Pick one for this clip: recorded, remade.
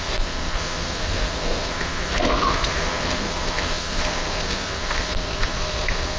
remade